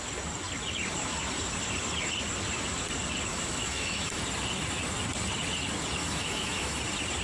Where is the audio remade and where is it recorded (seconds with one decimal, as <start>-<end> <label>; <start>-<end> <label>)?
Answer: 0.0-3.3 recorded; 3.3-4.2 remade; 4.2-6.0 recorded; 6.0-6.8 remade; 6.8-7.2 recorded